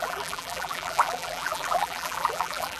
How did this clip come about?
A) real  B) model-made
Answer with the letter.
B